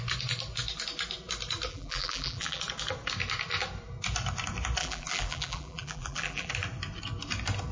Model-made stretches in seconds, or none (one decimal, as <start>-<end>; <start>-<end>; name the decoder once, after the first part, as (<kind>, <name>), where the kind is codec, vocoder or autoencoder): 1.7-2.6 (vocoder, BigVGAN v2); 4.8-6.5